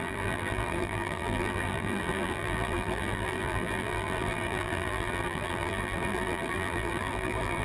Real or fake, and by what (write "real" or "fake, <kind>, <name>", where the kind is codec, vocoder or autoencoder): fake, vocoder, BigVGAN v2